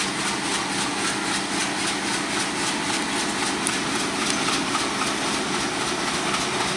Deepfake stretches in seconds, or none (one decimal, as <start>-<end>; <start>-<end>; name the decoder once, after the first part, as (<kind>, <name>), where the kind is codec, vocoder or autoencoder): none